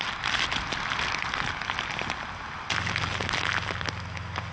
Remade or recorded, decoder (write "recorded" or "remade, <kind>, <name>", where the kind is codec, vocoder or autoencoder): recorded